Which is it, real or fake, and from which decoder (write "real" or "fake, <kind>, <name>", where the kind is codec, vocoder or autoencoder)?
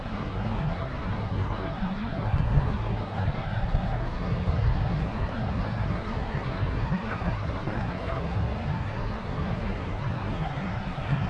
fake, codec, SNAC